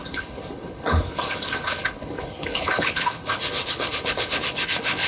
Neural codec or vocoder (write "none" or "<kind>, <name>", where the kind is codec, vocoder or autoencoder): codec, HILCodec